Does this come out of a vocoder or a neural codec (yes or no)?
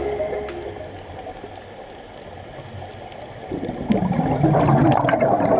no